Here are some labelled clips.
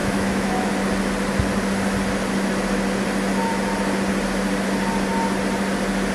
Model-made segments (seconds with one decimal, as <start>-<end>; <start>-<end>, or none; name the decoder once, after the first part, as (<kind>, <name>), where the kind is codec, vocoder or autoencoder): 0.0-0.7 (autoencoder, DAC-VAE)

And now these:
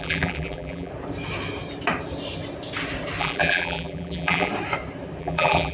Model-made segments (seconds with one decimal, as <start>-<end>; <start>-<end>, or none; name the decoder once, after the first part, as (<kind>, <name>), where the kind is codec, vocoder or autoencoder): 0.0-0.9 (vocoder, BigVGAN v2); 3.2-4.5; 5.2-5.7

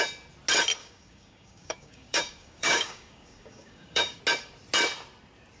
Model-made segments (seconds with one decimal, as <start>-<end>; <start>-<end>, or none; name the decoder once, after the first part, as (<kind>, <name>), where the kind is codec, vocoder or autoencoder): 0.8-4.2 (codec, DAC)

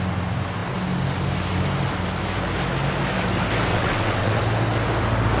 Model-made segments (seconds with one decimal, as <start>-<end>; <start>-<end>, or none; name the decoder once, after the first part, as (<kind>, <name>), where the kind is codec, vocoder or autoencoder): 3.7-4.4 (vocoder, WaveNeXt)

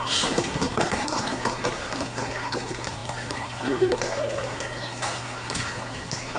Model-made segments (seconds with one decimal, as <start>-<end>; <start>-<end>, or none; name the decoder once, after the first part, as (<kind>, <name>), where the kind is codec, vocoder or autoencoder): 0.0-6.4 (codec, SNAC)

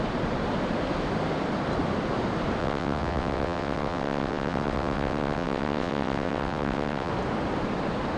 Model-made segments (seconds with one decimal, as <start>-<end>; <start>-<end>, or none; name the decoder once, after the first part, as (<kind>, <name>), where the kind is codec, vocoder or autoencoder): 2.6-7.1 (vocoder, WaveNeXt)

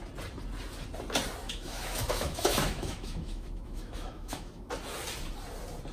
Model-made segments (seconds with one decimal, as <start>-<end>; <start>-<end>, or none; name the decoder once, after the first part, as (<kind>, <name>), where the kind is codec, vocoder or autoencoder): 1.4-4.7 (autoencoder, DAC-VAE)

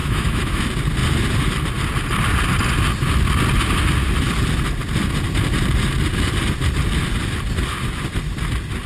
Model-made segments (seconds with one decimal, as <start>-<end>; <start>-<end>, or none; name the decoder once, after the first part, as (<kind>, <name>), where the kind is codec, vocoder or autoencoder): 0.0-0.6 (autoencoder, DAC-VAE)